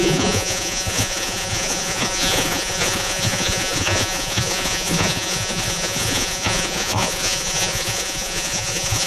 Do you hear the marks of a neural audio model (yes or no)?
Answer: yes